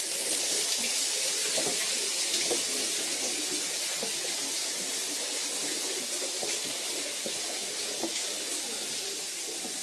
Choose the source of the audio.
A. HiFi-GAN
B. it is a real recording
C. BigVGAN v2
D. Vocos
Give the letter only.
B